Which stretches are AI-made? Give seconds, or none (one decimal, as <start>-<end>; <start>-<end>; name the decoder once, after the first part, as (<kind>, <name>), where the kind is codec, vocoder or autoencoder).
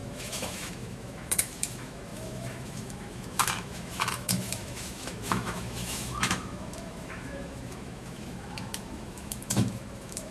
0.0-10.3 (autoencoder, DAC-VAE)